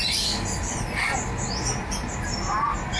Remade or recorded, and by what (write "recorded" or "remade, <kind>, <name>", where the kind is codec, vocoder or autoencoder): recorded